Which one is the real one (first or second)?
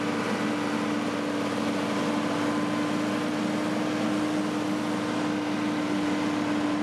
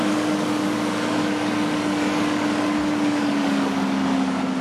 first